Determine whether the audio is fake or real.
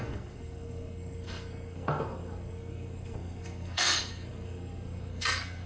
fake